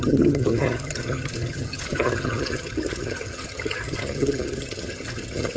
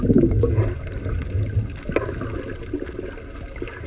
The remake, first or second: first